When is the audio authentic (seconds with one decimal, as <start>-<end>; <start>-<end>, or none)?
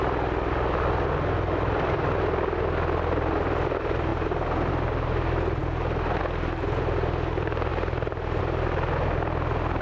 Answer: 0.0-5.6; 6.2-9.8